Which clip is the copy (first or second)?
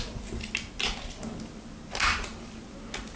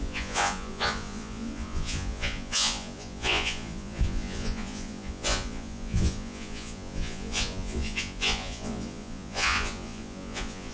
second